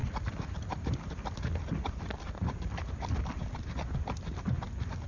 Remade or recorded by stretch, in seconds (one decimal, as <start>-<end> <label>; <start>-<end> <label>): 0.0-3.1 remade; 3.1-5.1 recorded